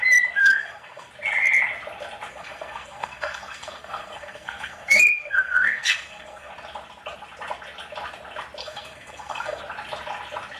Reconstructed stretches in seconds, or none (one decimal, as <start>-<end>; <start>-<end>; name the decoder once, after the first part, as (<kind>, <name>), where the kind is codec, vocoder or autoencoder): 0.4-1.1 (codec, SNAC); 2.3-6.5; 8.6-9.6